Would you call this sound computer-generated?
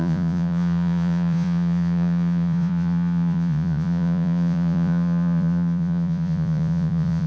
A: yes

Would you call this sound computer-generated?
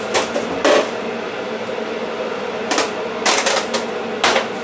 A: no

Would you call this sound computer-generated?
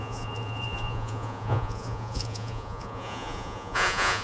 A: yes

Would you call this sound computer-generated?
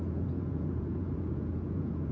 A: yes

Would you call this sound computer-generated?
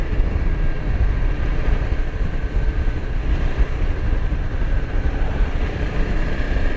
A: no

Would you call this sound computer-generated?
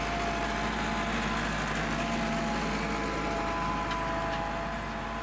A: no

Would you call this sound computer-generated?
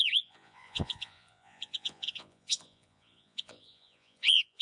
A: yes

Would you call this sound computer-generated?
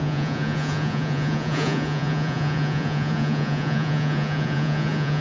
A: yes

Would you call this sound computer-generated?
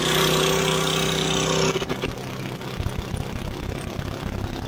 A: no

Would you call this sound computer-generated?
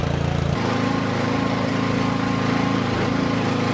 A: no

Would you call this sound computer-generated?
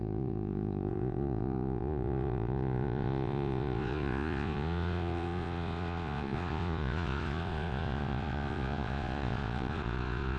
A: yes